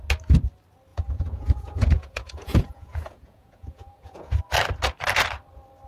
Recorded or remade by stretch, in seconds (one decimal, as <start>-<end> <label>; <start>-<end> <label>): 0.0-0.9 recorded; 0.9-4.4 remade; 4.4-5.9 recorded

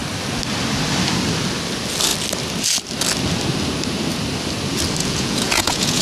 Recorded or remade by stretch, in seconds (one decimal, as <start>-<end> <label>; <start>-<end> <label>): 0.0-5.0 recorded; 5.0-6.0 remade

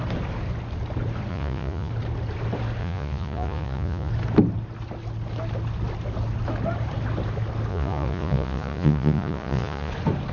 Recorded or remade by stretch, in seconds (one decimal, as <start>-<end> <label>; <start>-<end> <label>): 0.0-1.3 recorded; 1.3-1.9 remade; 1.9-2.8 recorded; 2.8-4.1 remade; 4.1-7.7 recorded; 7.7-9.9 remade; 9.9-10.3 recorded

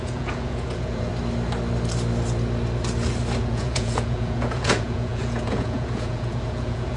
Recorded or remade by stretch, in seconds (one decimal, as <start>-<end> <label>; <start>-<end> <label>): 0.0-1.1 remade; 1.1-3.4 recorded; 3.4-7.0 remade

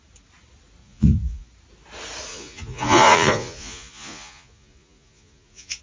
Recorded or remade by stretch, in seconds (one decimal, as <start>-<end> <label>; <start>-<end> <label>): 0.0-0.8 recorded; 0.8-1.5 remade; 1.5-2.3 recorded; 2.3-5.8 remade

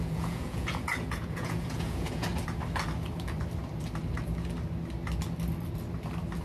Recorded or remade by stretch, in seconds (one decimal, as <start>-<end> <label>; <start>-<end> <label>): 0.0-2.3 remade; 2.3-6.4 recorded